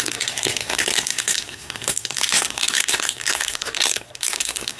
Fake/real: fake